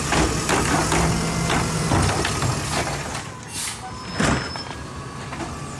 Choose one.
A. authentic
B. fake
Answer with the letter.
A